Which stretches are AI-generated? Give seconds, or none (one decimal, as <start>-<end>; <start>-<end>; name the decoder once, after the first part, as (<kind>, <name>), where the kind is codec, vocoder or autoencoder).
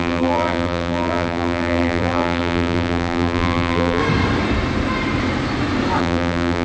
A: 0.0-4.0 (vocoder, BigVGAN v2); 6.0-6.6